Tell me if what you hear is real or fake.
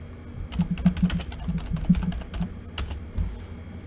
real